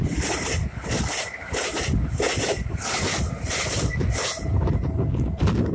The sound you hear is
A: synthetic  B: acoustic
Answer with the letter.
B